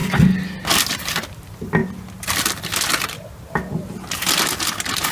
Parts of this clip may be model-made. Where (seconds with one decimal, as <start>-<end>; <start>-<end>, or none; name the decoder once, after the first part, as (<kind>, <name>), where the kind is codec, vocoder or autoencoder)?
none

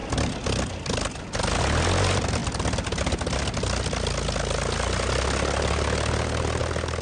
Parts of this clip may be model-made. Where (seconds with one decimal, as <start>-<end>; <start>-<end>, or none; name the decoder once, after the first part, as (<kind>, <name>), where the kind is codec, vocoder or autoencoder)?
none

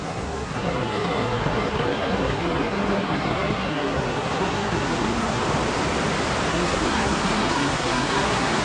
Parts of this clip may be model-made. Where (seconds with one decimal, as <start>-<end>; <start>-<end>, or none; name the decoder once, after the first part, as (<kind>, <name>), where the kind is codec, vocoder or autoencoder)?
0.0-5.4 (codec, SNAC); 6.5-8.6

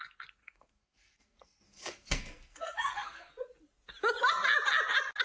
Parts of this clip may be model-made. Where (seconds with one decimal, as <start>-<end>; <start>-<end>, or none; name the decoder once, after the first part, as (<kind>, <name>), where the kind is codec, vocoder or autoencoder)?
0.4-3.3 (codec, SNAC)

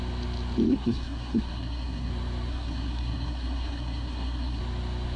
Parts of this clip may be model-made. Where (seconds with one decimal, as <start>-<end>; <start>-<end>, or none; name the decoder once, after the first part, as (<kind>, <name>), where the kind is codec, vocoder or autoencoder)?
0.7-2.1 (codec, SNAC); 2.5-4.6